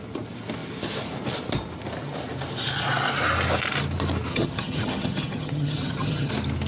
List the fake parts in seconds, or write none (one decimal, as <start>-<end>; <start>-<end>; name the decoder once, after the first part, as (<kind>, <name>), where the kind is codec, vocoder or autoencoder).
4.3-6.3 (vocoder, HiFi-GAN)